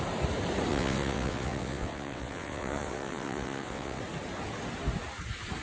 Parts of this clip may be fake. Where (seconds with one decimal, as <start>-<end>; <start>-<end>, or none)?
0.7-4.0